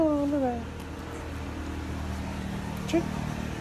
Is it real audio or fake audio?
real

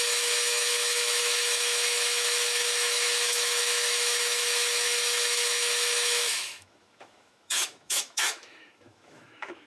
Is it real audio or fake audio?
fake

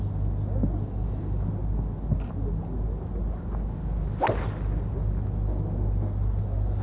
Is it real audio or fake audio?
real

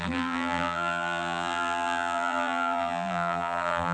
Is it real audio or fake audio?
fake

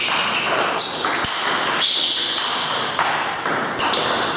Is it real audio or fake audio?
real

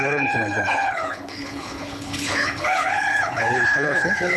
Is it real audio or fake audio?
fake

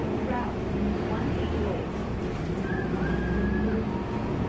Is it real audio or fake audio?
real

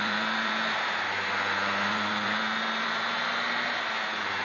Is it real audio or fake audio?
fake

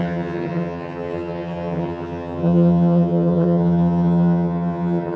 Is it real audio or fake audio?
fake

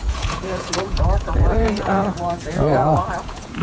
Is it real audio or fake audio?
fake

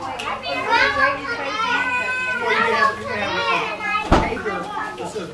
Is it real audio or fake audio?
real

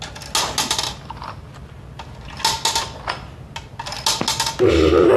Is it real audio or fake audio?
real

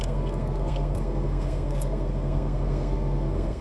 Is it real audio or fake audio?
fake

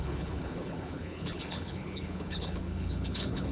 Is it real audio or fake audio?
fake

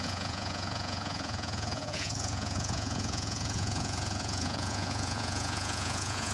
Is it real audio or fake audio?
fake